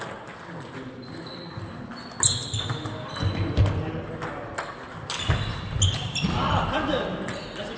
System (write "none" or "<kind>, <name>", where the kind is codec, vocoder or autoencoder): none